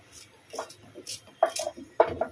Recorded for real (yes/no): yes